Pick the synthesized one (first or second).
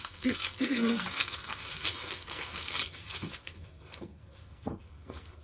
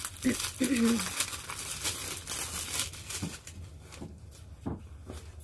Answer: first